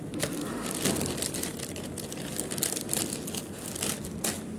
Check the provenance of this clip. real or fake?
real